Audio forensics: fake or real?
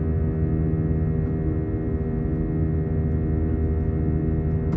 real